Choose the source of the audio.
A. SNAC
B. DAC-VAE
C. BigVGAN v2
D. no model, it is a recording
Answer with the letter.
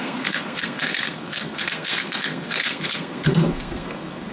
A